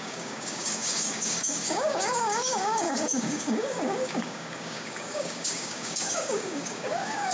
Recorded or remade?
remade